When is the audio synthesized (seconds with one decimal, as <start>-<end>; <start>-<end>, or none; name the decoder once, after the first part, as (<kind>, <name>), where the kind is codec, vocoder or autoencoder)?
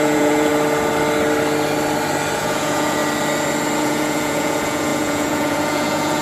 0.0-0.5 (vocoder, Vocos); 2.4-3.0; 3.8-6.2